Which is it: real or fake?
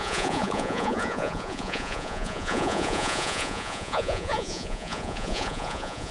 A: fake